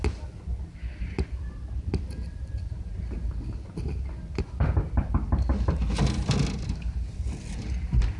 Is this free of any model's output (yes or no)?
yes